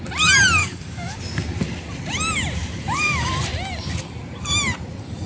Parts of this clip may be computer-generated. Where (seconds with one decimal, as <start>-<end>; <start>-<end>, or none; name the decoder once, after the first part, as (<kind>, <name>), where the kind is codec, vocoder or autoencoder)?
0.6-1.2 (codec, DAC)